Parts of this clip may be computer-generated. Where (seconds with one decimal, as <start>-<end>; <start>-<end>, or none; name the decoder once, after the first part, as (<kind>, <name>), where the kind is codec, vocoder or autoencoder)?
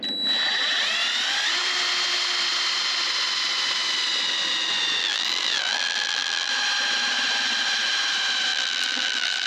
5.0-6.5 (vocoder, BigVGAN v2); 8.5-9.5